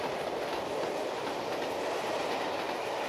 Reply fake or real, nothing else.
real